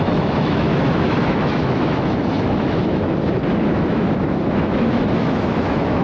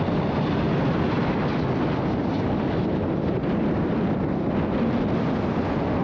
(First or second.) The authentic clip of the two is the second